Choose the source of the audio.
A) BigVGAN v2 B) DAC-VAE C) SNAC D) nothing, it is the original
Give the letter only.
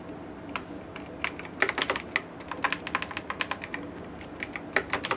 D